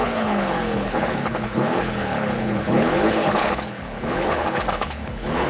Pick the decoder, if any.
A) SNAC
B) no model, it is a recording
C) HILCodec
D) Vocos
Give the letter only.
C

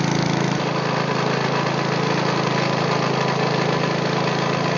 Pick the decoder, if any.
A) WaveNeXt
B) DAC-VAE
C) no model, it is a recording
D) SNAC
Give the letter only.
C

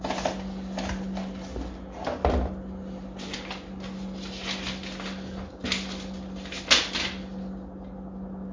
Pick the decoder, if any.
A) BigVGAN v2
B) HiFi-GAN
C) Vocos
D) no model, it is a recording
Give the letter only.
D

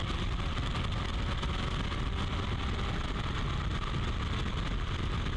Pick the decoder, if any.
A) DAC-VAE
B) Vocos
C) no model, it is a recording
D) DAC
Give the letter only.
C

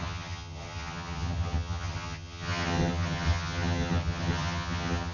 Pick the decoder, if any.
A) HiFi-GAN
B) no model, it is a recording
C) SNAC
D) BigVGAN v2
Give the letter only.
A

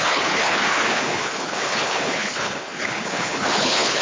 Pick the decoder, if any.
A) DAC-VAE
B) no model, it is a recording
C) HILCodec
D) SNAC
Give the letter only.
C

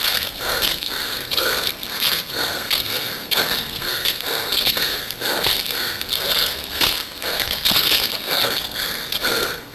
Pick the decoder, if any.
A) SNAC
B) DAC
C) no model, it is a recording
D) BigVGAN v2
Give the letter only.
A